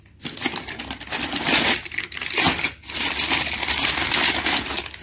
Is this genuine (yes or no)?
yes